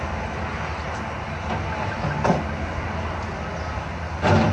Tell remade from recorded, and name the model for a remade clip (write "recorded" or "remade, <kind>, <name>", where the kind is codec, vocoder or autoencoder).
recorded